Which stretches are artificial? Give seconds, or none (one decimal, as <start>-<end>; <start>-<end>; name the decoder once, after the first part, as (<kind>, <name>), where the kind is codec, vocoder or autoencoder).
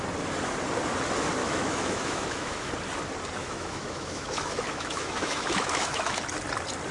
1.4-2.7 (autoencoder, DAC-VAE); 3.4-6.2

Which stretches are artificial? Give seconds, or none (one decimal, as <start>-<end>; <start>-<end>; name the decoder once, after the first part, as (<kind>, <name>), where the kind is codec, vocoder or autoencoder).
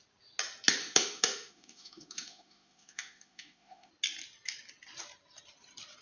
0.8-3.9 (autoencoder, DAC-VAE)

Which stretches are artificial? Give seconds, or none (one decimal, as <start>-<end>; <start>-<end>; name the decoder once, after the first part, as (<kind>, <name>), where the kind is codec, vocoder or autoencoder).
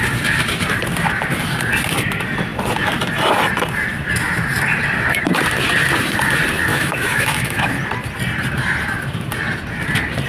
6.7-7.7 (autoencoder, DAC-VAE)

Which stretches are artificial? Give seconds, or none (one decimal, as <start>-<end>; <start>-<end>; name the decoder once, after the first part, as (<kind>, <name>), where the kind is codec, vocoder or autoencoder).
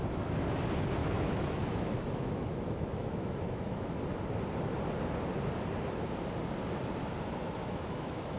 1.0-3.9 (autoencoder, DAC-VAE); 7.6-8.4